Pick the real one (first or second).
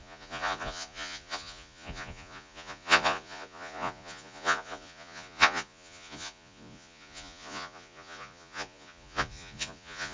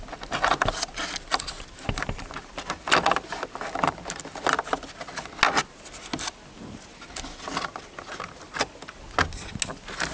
second